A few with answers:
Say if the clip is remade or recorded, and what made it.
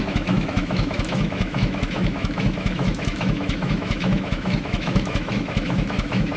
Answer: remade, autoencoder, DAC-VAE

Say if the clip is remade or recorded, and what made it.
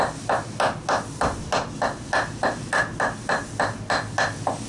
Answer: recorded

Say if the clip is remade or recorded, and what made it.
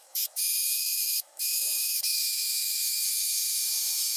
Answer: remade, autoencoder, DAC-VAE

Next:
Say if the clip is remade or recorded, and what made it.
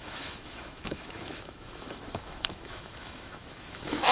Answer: remade, autoencoder, DAC-VAE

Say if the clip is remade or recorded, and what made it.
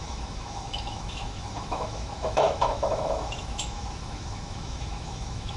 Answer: remade, autoencoder, DAC-VAE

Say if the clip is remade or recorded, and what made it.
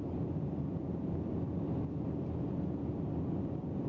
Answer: recorded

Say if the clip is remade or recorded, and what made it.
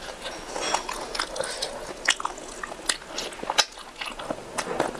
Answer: recorded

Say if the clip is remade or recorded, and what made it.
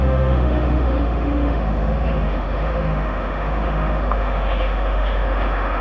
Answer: remade, autoencoder, DAC-VAE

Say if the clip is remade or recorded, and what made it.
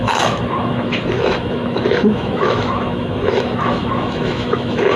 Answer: remade, autoencoder, DAC-VAE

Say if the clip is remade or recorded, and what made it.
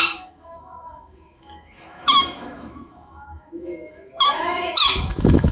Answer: remade, autoencoder, DAC-VAE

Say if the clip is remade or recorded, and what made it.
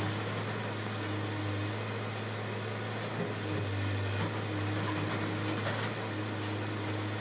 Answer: recorded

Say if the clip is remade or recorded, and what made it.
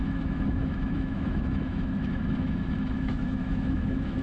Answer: remade, autoencoder, DAC-VAE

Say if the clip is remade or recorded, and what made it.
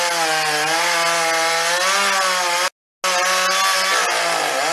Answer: recorded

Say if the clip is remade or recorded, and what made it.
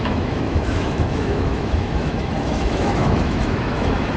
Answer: remade, autoencoder, DAC-VAE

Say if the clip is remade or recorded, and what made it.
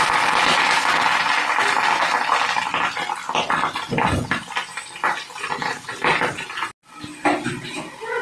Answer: recorded